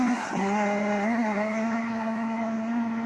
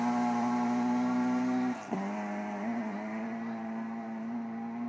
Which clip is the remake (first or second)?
first